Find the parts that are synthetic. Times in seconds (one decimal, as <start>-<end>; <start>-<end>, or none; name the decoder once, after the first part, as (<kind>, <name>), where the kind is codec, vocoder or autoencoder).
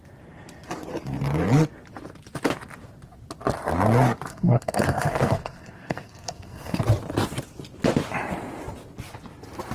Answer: 4.3-6.8 (codec, SNAC)